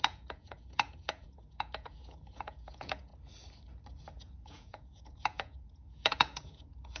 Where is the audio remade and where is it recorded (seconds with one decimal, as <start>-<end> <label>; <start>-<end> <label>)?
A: 0.0-3.1 remade; 3.1-4.2 recorded; 4.2-7.0 remade